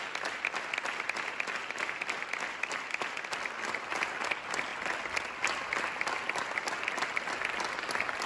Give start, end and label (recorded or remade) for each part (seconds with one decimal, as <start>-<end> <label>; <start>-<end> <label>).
0.0-8.3 recorded